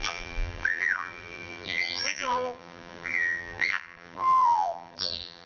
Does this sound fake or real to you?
fake